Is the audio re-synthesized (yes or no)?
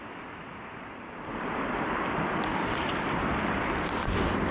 no